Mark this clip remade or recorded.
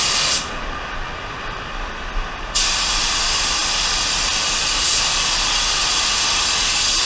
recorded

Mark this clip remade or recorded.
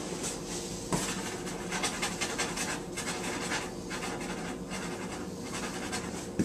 recorded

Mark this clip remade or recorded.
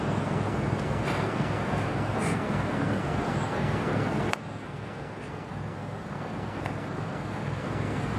remade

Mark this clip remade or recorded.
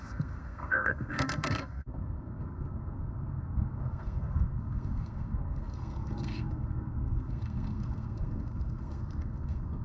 remade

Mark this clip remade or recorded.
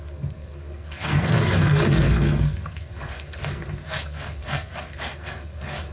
remade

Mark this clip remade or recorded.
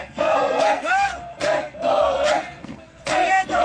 remade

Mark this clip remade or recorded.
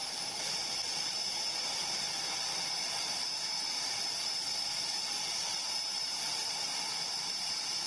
recorded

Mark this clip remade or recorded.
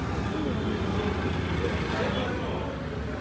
recorded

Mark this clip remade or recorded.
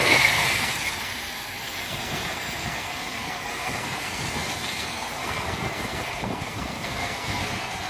remade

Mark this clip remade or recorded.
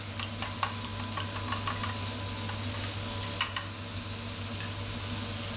recorded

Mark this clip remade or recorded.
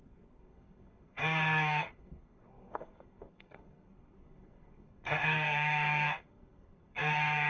remade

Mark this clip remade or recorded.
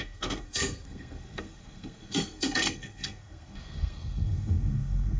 remade